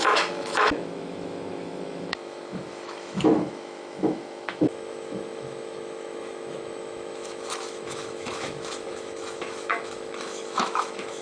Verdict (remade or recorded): remade